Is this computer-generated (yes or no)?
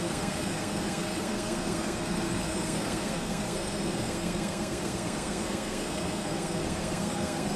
yes